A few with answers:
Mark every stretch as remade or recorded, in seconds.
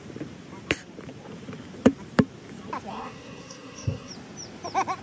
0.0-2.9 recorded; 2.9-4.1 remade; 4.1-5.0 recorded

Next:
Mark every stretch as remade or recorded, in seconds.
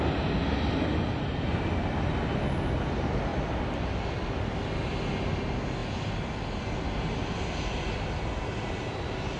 0.0-9.4 recorded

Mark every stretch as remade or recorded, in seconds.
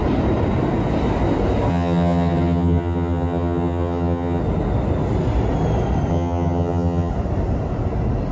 0.0-1.7 recorded; 1.7-4.4 remade; 4.4-6.1 recorded; 6.1-7.1 remade; 7.1-8.3 recorded